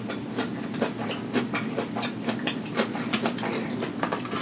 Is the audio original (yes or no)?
yes